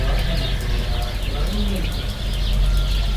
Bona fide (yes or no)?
yes